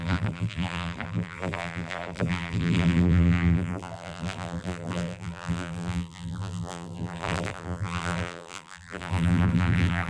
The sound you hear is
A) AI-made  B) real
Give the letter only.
A